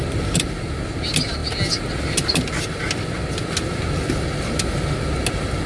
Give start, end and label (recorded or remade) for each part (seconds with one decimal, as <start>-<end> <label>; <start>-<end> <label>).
0.0-5.7 recorded